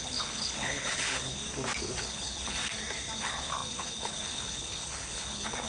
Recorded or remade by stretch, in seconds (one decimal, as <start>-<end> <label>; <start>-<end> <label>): 0.0-1.4 remade; 1.4-2.0 recorded; 2.0-2.6 remade; 2.6-3.2 recorded; 3.2-5.7 remade